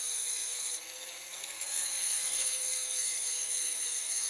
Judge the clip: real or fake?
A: fake